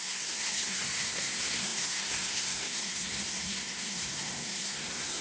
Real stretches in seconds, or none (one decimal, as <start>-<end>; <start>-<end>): none